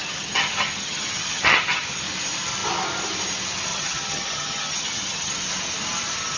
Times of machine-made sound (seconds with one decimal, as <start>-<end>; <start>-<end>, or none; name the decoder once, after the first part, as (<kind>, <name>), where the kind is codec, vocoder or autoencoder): 0.0-1.8 (vocoder, HiFi-GAN); 3.7-5.3